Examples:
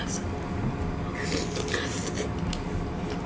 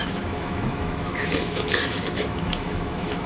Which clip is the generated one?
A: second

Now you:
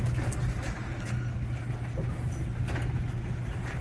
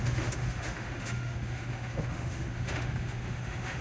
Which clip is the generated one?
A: second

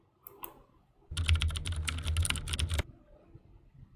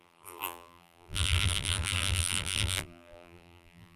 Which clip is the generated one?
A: second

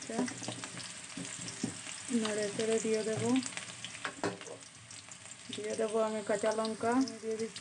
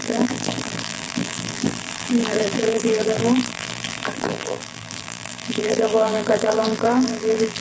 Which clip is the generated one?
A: second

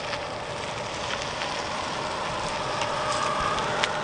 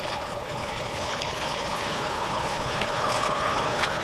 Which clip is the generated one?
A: second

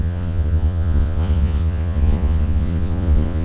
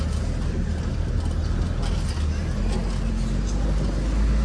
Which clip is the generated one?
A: first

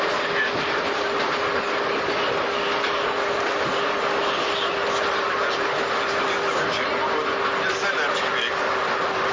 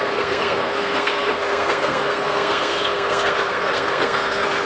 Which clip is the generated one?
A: second